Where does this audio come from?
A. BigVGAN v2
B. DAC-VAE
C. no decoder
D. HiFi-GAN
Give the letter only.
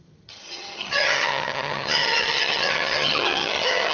D